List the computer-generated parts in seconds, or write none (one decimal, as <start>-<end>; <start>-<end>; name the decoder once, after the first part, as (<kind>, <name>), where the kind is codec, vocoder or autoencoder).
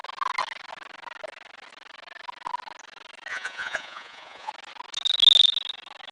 3.3-4.5 (vocoder, Vocos)